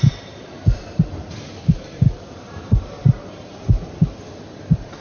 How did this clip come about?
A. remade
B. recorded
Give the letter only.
A